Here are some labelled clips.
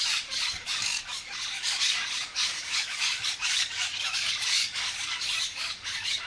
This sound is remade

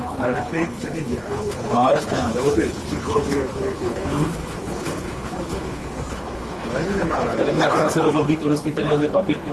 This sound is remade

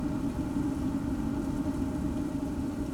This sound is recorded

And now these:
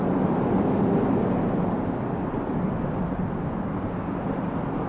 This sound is recorded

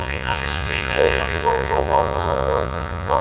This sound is remade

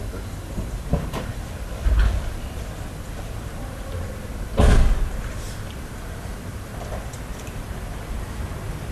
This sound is remade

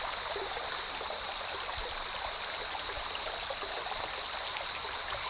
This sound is recorded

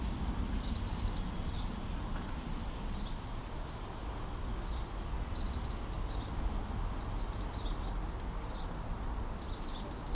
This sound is recorded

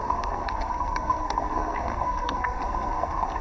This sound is remade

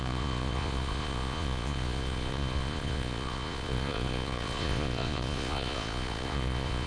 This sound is remade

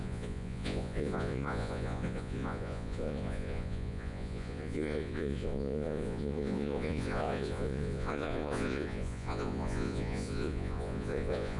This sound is remade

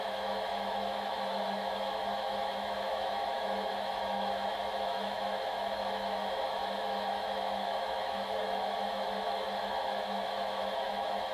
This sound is remade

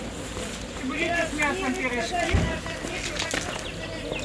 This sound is recorded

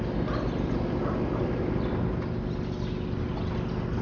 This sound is recorded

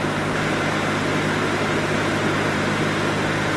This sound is recorded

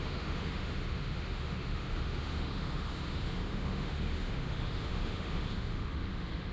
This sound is remade